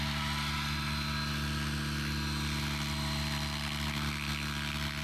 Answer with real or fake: real